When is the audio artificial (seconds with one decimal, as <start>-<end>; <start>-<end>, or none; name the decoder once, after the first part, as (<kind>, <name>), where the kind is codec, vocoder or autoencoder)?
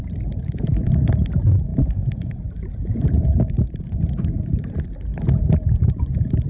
0.0-5.1 (vocoder, BigVGAN v2); 5.9-6.5